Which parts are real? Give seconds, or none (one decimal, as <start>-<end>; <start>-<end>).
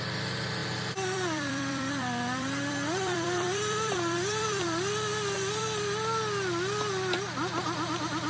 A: 0.0-0.6; 5.6-8.3